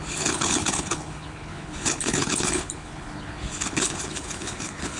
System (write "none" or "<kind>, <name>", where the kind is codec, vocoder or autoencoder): codec, HILCodec